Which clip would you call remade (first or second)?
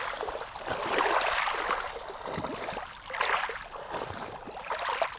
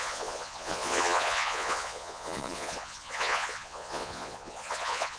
second